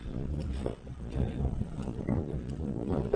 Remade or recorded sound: remade